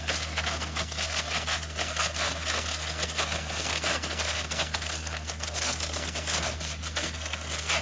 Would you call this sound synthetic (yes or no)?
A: yes